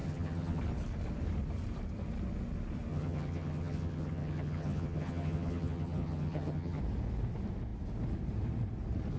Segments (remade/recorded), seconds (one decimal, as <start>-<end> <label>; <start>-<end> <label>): 0.0-0.6 remade; 0.6-2.9 recorded; 2.9-6.8 remade; 6.8-9.2 recorded